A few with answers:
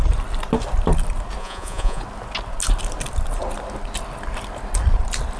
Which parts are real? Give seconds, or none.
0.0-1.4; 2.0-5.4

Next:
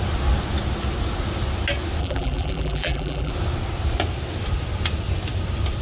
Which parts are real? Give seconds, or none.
0.0-2.0; 3.3-5.8

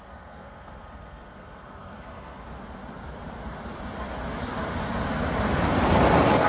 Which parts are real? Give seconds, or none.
2.5-6.5

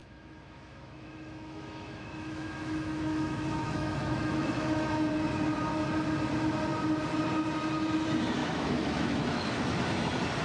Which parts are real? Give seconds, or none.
5.1-8.4; 9.8-10.4

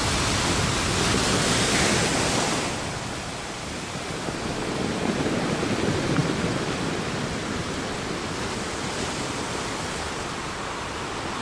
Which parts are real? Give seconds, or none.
0.0-11.4

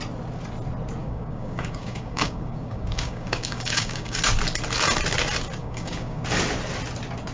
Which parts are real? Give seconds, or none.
0.0-1.0; 4.2-5.6; 6.2-7.3

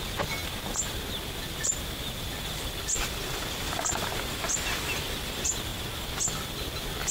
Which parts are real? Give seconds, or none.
0.0-7.1

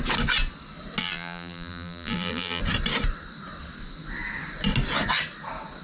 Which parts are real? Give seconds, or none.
0.0-1.0; 2.6-5.8